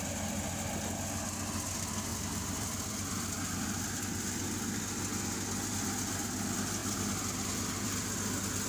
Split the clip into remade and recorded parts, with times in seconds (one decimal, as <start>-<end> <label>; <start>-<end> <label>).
0.0-2.1 recorded; 2.1-4.8 remade; 4.8-6.8 recorded; 6.8-7.9 remade; 7.9-8.7 recorded